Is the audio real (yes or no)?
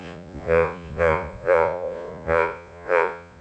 no